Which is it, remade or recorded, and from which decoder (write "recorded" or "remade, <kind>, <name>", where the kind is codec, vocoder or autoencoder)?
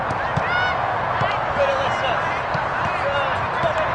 recorded